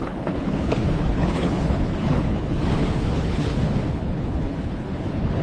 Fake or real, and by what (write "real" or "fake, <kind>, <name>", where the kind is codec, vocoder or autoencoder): fake, codec, HILCodec